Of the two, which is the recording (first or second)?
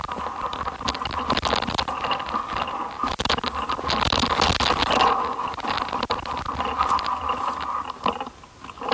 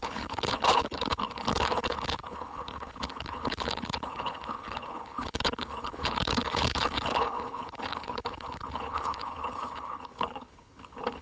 first